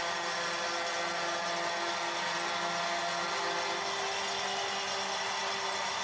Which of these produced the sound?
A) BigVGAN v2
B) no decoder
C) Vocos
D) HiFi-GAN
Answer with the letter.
B